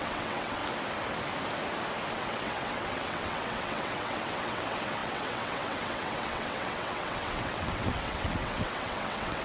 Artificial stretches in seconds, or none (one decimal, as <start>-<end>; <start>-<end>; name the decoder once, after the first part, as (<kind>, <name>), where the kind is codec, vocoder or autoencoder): 0.0-0.6 (vocoder, WaveNeXt); 2.1-9.4